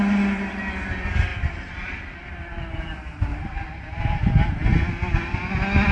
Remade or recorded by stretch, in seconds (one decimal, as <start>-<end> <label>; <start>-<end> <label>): 0.0-1.3 recorded; 1.3-2.3 remade; 2.3-3.3 recorded; 3.3-4.0 remade; 4.0-5.9 recorded